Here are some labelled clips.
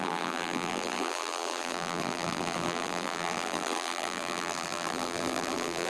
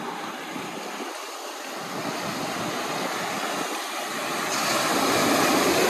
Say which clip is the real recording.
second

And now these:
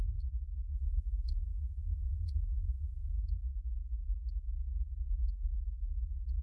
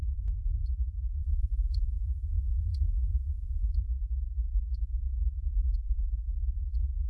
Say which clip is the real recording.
first